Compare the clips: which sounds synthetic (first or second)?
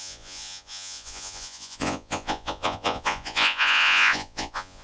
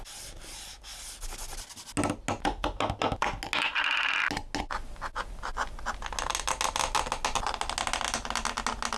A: first